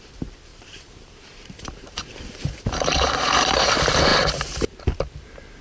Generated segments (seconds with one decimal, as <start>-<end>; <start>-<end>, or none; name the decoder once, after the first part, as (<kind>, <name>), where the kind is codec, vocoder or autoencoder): 0.0-5.6 (vocoder, BigVGAN v2)